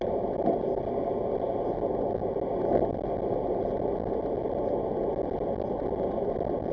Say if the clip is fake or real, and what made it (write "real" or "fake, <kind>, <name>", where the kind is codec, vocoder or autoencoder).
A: real